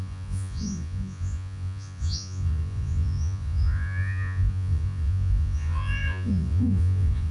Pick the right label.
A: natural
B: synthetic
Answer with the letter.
B